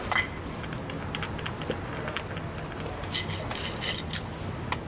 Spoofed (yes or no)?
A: no